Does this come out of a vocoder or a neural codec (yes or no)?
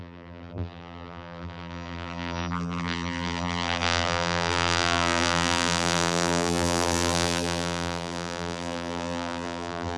yes